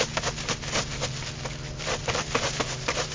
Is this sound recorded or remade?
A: recorded